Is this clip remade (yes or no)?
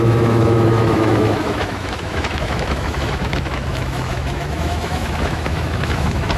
yes